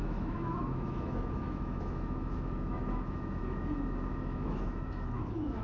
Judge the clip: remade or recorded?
remade